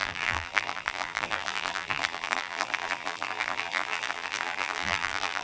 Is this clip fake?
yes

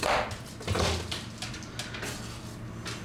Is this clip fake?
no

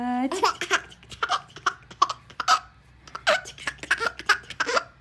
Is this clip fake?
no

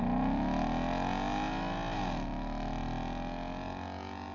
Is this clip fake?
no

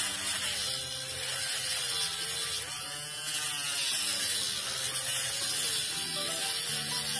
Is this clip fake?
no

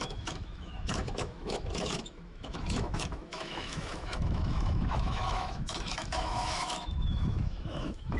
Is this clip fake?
yes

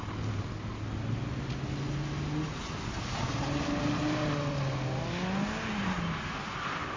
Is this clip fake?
no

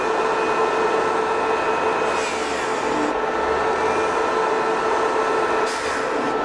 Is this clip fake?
no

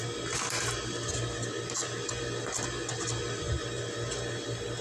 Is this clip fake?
no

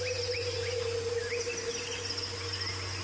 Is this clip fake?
no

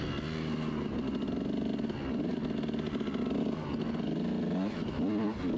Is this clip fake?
no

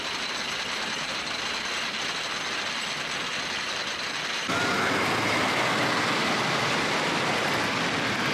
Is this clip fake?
no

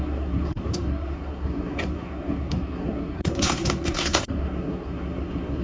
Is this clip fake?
yes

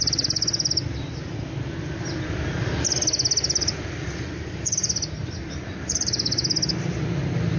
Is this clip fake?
no